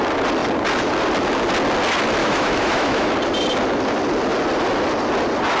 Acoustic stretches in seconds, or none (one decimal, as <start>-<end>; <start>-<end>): 0.0-2.2; 3.1-5.6

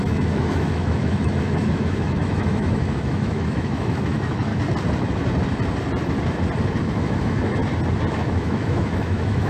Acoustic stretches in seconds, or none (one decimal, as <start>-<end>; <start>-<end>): 4.5-6.8; 7.6-8.1

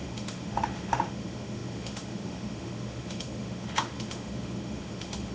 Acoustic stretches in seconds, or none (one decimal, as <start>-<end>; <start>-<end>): none

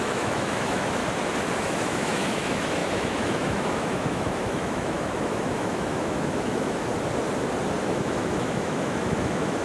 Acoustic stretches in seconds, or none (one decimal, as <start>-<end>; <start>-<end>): 1.0-1.6; 6.9-7.8

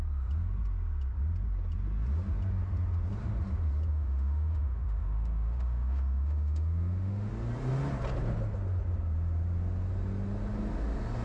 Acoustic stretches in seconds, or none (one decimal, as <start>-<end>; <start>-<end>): 0.0-3.9; 7.3-11.2

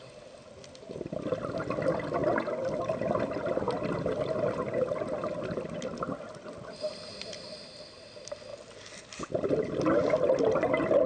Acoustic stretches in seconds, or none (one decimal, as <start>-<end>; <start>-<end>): 0.0-11.1